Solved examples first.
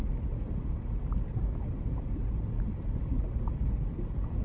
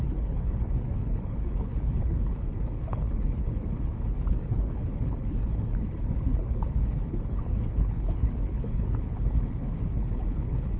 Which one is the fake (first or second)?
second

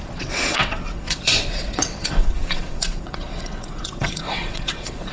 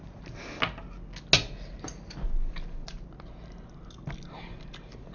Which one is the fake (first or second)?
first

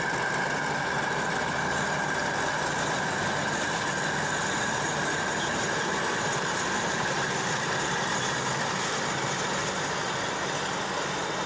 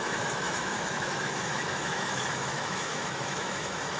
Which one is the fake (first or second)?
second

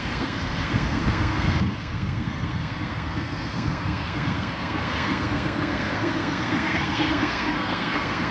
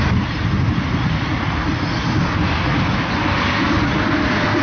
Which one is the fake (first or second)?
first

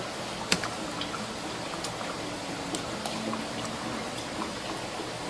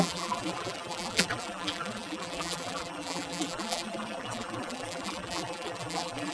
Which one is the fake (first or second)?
second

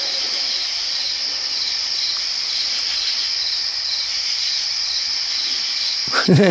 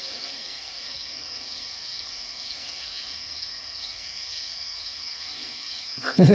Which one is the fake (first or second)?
second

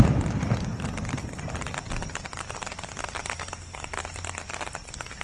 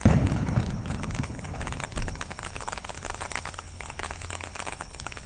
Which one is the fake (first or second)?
second